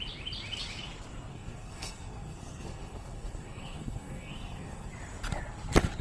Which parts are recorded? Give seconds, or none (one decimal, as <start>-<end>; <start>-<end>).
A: 0.0-1.3; 4.9-6.0